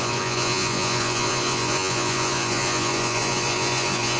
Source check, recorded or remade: remade